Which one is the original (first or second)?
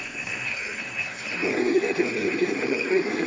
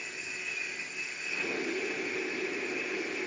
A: second